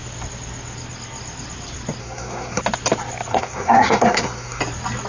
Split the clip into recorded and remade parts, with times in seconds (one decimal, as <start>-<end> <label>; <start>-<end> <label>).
0.0-2.0 recorded; 2.0-2.6 remade; 2.6-3.3 recorded; 3.3-4.6 remade; 4.6-5.1 recorded